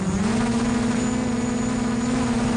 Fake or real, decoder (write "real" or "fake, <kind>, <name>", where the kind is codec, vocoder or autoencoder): real